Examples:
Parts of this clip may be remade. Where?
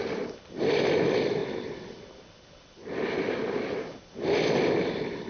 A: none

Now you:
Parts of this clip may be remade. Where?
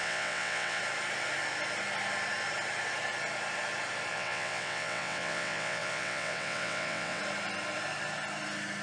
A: 0.0-0.8; 4.1-7.2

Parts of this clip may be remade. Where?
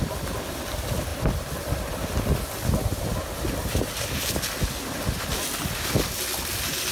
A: none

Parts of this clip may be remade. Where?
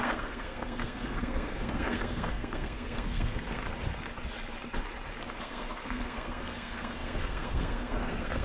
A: 0.0-3.6; 5.4-8.4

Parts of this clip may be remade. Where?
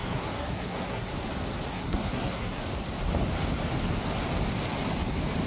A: 0.0-1.1; 1.7-2.6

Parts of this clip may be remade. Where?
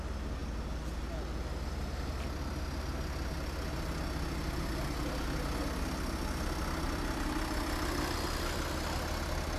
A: none